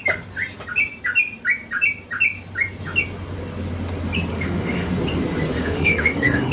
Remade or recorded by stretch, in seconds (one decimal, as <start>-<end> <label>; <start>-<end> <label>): 0.0-4.3 recorded; 4.3-4.9 remade; 4.9-5.5 recorded; 5.5-6.5 remade